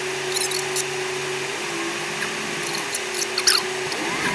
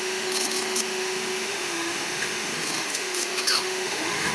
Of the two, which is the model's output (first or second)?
second